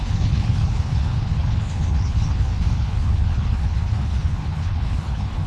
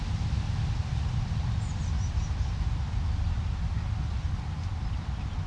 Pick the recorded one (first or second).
second